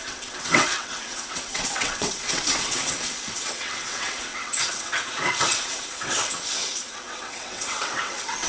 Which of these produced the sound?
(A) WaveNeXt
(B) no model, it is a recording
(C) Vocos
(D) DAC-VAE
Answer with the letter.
A